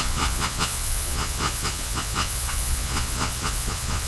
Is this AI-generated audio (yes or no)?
yes